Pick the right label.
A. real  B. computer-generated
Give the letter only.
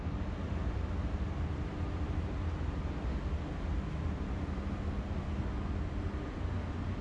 A